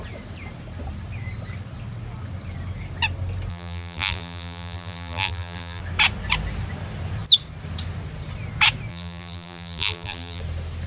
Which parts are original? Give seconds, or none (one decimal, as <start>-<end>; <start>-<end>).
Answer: 0.0-3.5; 5.8-8.9; 10.4-10.9